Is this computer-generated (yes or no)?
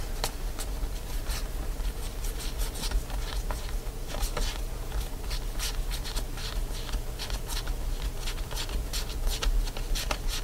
no